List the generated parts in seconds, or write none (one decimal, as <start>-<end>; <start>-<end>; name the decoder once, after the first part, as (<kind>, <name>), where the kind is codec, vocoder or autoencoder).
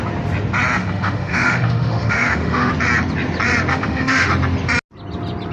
0.8-2.7 (autoencoder, DAC-VAE); 3.7-4.3